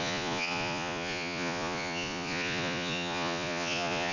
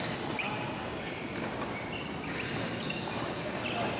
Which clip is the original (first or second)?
second